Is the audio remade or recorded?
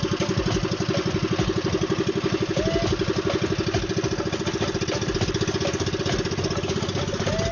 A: recorded